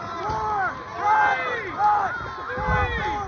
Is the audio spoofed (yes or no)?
no